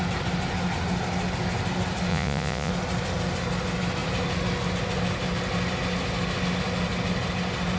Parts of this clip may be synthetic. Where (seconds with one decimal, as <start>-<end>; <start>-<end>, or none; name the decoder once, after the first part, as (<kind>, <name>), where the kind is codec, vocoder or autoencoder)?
2.1-2.7 (vocoder, Vocos)